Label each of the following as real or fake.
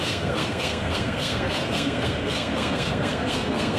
fake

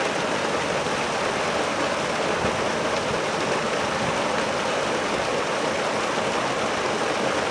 real